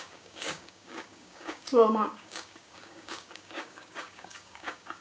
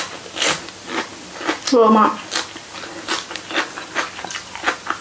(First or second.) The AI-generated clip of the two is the first